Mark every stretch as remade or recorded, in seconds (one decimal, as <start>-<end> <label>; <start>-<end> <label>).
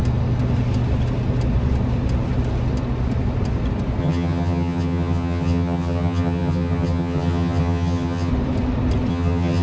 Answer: 0.0-4.0 recorded; 4.0-8.3 remade; 8.3-9.1 recorded; 9.1-9.6 remade